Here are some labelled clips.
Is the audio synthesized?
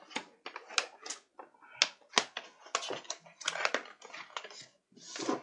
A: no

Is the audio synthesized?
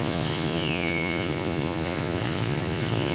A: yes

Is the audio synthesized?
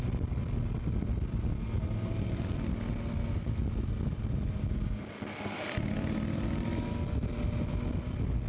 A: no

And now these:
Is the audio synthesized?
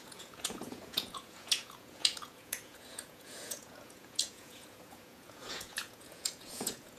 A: yes